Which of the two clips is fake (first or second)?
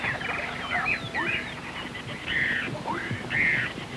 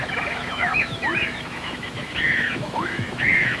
second